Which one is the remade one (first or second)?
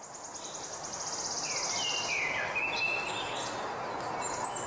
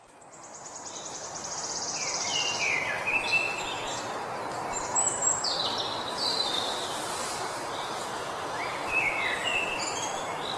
second